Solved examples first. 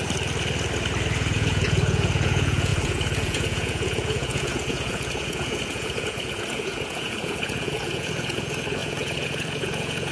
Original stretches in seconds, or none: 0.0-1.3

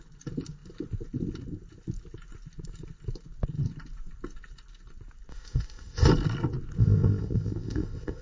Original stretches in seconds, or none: 0.0-5.3; 6.1-6.8

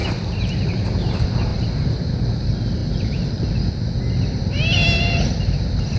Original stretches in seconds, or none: 0.0-1.5; 2.2-6.0

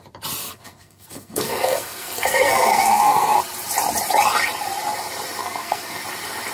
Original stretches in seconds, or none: 0.0-0.4; 3.4-5.4; 6.0-6.5

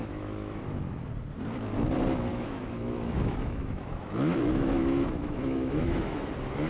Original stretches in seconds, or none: 0.6-2.3; 6.3-6.7